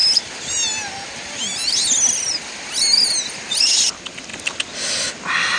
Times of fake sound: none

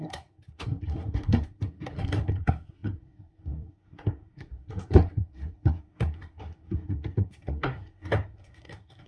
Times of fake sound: 0.0-9.1 (codec, SNAC)

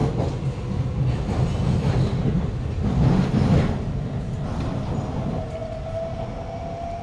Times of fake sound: none